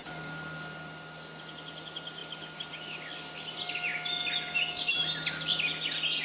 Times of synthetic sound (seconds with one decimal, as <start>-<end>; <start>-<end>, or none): none